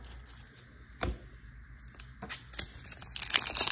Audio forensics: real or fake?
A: real